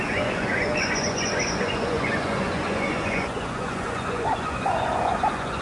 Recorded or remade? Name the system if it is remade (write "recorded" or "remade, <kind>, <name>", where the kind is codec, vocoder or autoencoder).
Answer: remade, vocoder, Vocos